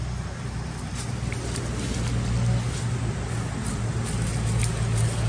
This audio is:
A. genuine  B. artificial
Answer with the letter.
A